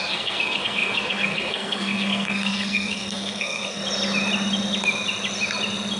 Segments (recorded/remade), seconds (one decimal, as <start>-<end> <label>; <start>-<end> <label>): 0.0-3.8 remade; 3.8-6.0 recorded